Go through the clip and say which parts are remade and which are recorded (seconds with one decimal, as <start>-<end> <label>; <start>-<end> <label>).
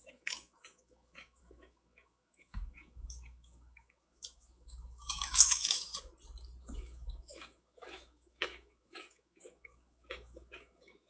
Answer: 0.0-5.9 remade; 5.9-6.6 recorded; 6.6-11.1 remade